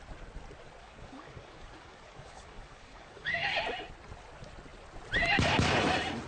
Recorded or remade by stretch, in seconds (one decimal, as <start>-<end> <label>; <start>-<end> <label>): 0.0-0.8 recorded; 0.8-3.6 remade; 3.6-6.3 recorded